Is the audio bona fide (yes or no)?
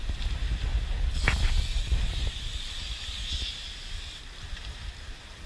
yes